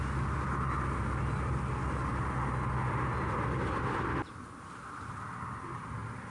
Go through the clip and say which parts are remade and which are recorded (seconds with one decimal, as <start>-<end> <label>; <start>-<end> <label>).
0.0-6.3 recorded